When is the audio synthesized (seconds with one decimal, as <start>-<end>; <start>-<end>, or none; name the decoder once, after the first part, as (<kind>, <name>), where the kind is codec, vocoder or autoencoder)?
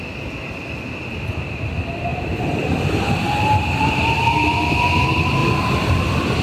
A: 2.1-4.2 (vocoder, BigVGAN v2); 5.4-6.0